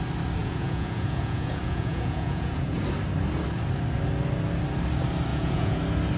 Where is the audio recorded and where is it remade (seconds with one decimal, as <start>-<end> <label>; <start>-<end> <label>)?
0.0-0.4 recorded; 0.4-2.8 remade; 2.8-5.3 recorded; 5.3-5.8 remade; 5.8-6.2 recorded